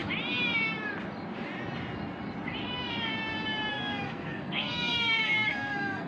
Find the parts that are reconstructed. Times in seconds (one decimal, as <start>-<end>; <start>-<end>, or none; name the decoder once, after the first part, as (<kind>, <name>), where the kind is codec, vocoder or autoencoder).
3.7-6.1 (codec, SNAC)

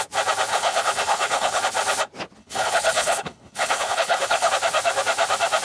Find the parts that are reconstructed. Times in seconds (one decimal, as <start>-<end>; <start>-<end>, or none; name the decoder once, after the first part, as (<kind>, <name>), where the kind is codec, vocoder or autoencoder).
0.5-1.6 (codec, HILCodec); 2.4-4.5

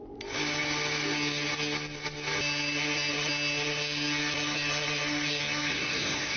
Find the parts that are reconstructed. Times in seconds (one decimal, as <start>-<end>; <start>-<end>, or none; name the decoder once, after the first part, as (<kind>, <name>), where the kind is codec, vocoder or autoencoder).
5.7-6.4 (codec, SNAC)